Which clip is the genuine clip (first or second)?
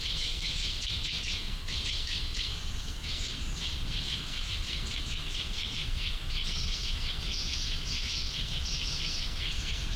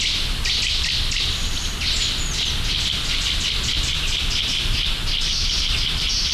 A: second